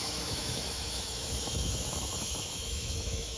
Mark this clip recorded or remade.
remade